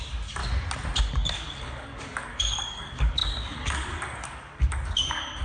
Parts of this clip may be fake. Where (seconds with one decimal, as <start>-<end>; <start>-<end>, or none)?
0.0-0.4; 1.0-5.4